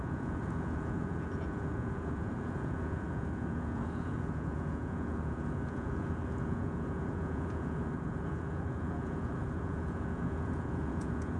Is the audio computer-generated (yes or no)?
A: yes